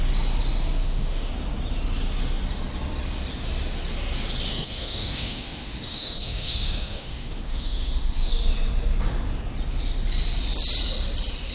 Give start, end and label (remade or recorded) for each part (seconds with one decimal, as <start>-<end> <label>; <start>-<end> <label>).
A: 0.0-0.8 recorded; 0.8-1.3 remade; 1.3-4.5 recorded; 4.5-8.3 remade; 8.3-11.5 recorded